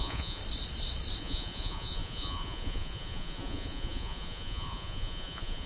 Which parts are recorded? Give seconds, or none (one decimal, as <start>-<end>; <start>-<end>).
0.4-1.2